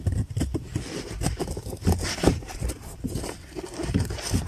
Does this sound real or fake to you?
fake